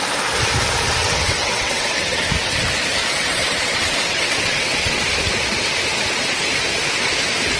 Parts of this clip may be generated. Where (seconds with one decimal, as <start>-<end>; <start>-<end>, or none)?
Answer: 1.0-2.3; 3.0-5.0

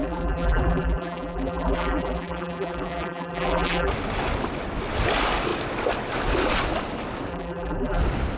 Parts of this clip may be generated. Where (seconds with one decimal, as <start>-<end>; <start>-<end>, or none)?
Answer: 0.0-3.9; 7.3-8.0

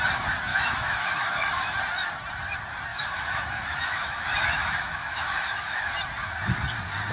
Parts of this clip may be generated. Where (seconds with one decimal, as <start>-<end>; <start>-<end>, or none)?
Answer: 0.5-1.8; 2.9-5.9

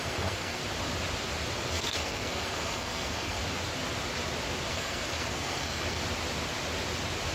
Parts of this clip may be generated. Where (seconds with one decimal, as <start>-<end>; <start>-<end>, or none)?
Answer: 0.0-0.6; 1.7-3.4; 4.7-6.0